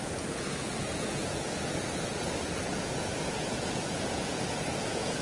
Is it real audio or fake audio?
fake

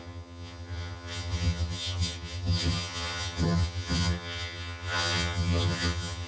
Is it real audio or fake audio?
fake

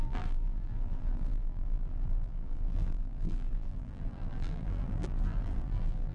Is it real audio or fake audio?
fake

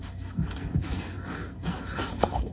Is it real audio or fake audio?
fake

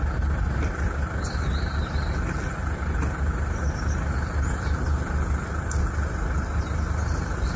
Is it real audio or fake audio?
real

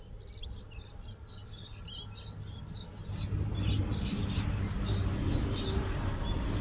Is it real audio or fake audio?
real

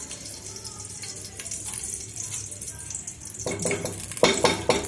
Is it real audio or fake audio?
real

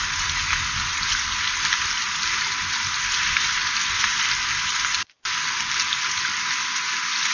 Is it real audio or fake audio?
real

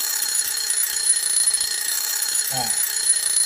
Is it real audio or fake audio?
fake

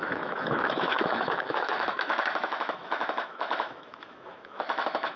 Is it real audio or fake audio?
fake